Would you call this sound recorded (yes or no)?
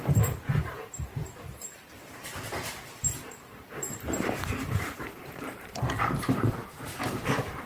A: no